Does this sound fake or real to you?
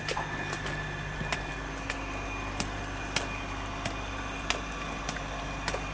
real